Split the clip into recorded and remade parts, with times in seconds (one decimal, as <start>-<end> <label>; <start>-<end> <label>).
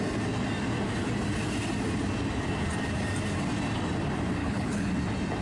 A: 0.0-4.4 recorded; 4.4-4.9 remade; 4.9-5.4 recorded